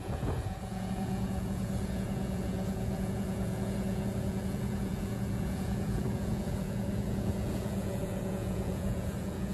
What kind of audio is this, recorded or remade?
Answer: remade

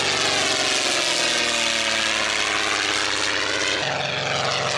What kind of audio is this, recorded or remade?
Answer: recorded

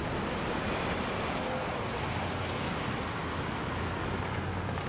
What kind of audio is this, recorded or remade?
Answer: recorded